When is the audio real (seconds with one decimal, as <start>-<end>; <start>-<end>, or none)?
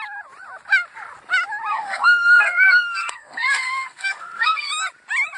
0.0-1.7; 4.7-5.4